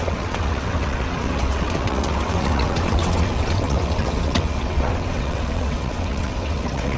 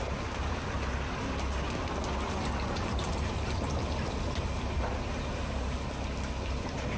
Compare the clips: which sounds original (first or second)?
second